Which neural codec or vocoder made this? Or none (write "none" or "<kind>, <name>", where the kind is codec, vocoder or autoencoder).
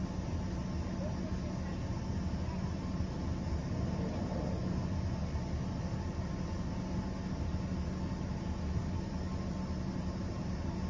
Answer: none